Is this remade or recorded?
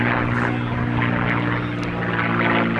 recorded